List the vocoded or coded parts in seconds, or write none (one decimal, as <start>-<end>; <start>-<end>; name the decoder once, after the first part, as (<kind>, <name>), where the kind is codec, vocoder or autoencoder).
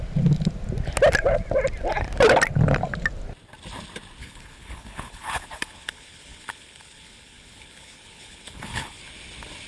4.2-9.0 (codec, HILCodec)